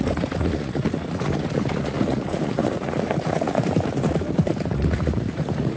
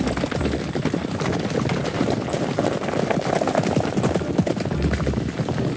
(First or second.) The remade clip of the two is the first